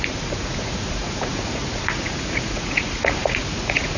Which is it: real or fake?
fake